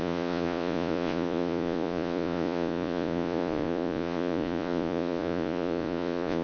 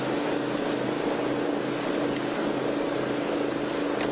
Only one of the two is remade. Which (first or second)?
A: first